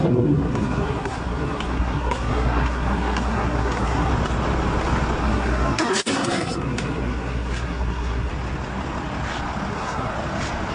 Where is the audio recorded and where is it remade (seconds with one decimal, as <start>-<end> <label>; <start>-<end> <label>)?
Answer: 0.0-4.1 remade; 4.1-5.2 recorded; 5.2-8.3 remade; 8.3-9.7 recorded; 9.7-10.1 remade; 10.1-10.7 recorded